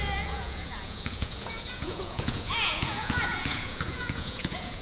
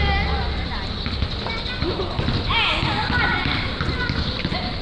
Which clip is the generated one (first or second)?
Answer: first